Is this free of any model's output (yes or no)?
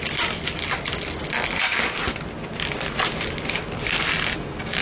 yes